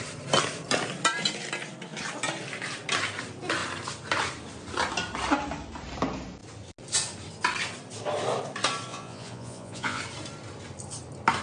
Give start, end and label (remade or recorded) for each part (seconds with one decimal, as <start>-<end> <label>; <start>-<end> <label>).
0.0-8.9 recorded; 8.9-10.0 remade; 10.0-11.4 recorded